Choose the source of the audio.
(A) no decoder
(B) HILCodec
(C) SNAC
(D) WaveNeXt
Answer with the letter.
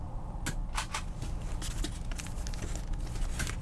A